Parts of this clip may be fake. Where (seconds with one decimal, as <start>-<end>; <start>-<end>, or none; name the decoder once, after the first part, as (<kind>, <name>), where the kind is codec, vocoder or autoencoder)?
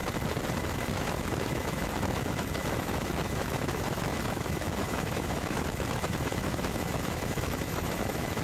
0.6-8.4 (autoencoder, DAC-VAE)